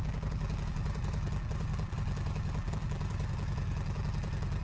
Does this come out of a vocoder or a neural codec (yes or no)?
yes